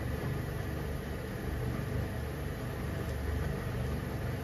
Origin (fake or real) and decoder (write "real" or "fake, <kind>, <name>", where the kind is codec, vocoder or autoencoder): real